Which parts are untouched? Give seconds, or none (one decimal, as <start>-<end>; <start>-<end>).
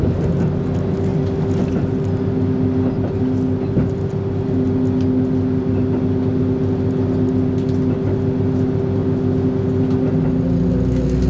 0.0-11.3